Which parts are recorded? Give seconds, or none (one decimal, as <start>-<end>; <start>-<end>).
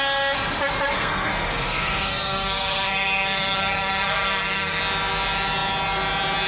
0.0-0.9; 4.8-6.5